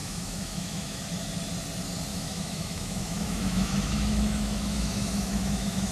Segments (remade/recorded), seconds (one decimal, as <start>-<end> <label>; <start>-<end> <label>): 0.0-1.0 remade; 1.0-2.1 recorded; 2.1-5.9 remade